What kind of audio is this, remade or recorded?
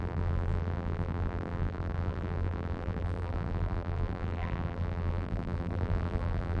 remade